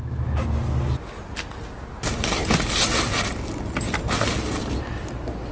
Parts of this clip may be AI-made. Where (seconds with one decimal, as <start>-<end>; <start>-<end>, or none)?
none